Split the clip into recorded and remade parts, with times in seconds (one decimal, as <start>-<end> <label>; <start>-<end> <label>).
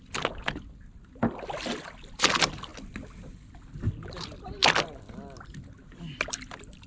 0.0-6.9 recorded